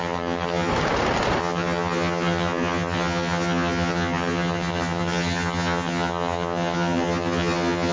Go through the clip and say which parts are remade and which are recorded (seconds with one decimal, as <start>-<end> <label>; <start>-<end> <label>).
0.0-0.7 remade; 0.7-1.4 recorded; 1.4-7.9 remade